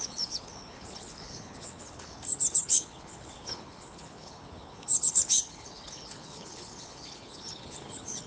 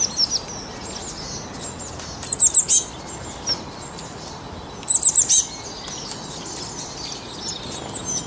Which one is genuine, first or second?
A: second